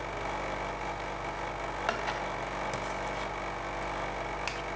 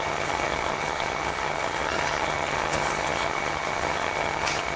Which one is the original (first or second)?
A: first